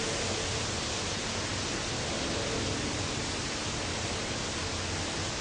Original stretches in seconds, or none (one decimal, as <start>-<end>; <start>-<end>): 0.0-5.4